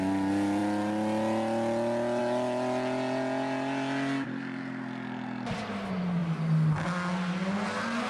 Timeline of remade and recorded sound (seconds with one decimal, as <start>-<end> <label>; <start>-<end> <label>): 0.0-8.1 recorded